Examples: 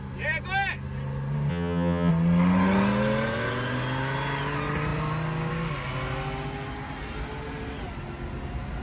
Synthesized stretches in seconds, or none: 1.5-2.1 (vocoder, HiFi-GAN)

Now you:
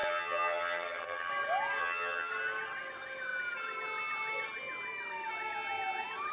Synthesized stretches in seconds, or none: 0.0-1.3 (vocoder, HiFi-GAN); 1.8-2.3